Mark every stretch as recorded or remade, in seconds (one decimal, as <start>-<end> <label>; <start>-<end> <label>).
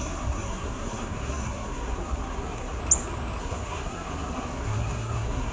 0.0-2.8 remade; 2.8-3.4 recorded; 3.4-5.5 remade